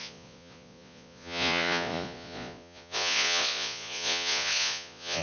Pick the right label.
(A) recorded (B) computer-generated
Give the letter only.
B